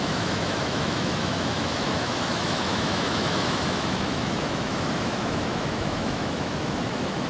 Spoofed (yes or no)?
yes